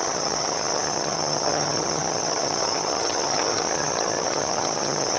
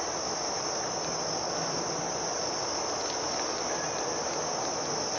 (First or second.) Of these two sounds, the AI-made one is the first